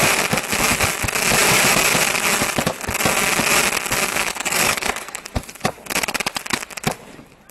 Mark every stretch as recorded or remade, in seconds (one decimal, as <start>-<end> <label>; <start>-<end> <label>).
0.0-4.1 recorded; 4.1-5.2 remade; 5.2-7.5 recorded